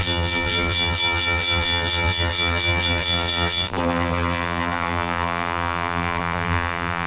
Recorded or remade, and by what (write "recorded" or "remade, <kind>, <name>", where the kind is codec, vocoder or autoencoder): remade, vocoder, BigVGAN v2